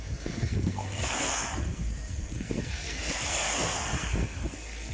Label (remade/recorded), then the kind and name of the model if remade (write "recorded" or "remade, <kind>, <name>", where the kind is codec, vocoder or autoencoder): remade, codec, SNAC